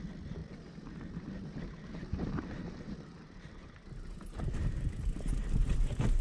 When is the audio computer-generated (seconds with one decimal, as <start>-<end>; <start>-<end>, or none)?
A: 0.4-1.6; 2.0-5.7